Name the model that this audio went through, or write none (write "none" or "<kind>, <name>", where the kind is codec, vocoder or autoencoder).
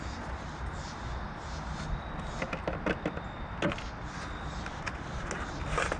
none